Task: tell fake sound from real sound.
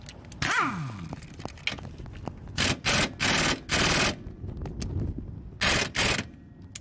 real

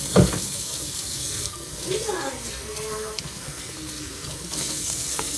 fake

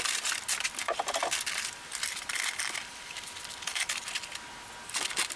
real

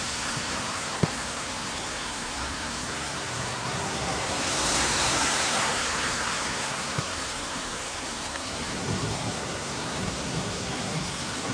fake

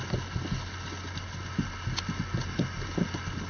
real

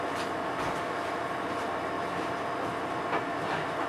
real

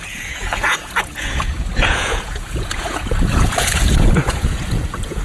fake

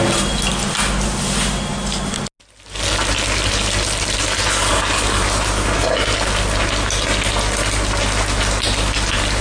real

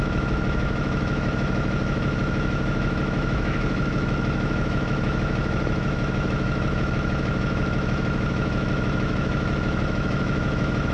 fake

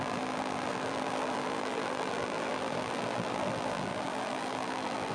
fake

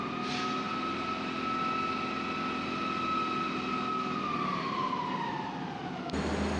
real